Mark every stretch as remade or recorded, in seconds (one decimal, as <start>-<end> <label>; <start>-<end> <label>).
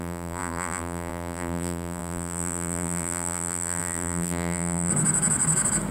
0.0-4.9 remade; 4.9-5.9 recorded